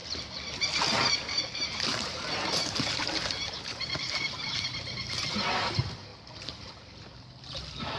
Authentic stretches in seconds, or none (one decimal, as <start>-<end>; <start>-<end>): 0.0-1.1; 6.1-8.0